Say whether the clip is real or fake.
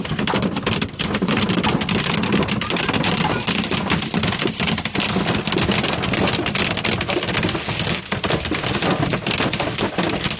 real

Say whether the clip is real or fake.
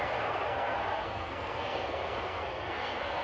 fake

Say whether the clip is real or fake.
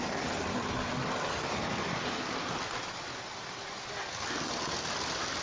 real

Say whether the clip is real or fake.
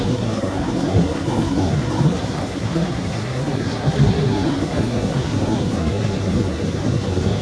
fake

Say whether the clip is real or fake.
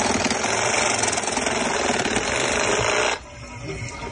real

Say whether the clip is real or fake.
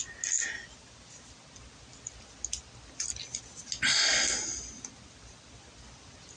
real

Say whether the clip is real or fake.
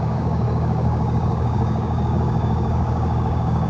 fake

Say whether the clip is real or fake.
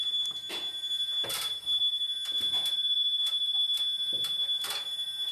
fake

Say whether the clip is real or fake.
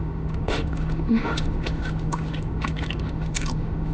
fake